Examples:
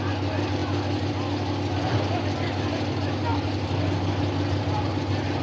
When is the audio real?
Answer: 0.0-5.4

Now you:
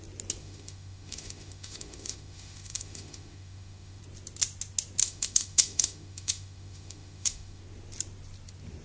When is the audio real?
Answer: 0.0-0.4; 4.0-5.0; 7.6-8.8

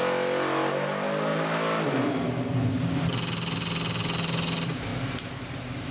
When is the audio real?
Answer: 0.0-5.9